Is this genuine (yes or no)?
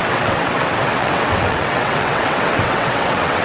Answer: no